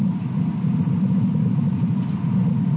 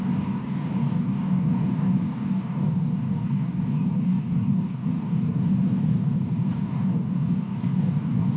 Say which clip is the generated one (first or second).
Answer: second